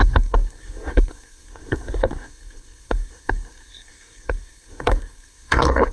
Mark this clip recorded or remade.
remade